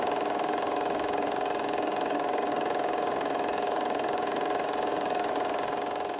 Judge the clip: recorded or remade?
remade